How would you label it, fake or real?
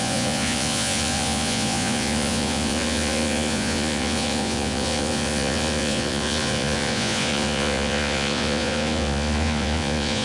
fake